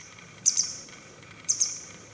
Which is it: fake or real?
fake